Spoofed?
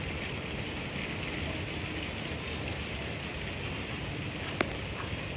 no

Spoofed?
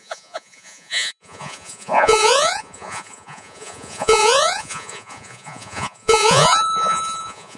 yes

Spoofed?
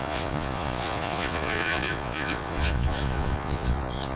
yes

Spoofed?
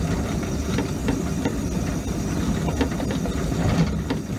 no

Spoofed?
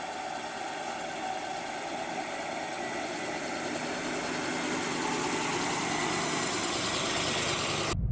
no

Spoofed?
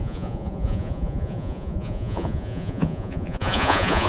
yes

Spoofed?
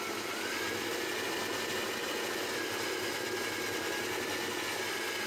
no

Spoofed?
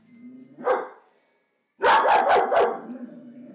no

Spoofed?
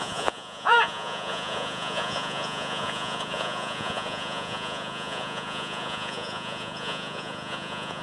yes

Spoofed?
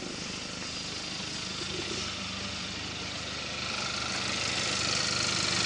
no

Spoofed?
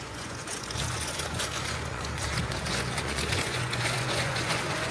yes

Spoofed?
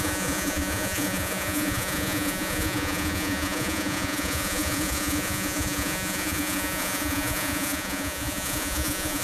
yes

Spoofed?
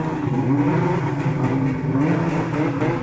no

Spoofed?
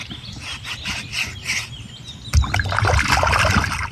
no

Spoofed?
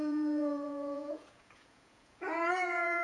yes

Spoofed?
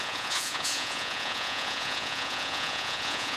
yes